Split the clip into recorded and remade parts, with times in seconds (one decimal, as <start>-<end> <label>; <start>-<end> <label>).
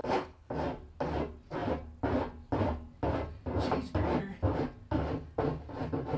0.0-0.5 remade; 0.5-6.2 recorded